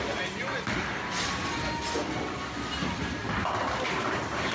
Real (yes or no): yes